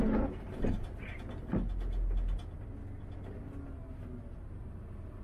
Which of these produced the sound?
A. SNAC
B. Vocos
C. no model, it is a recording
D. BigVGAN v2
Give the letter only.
C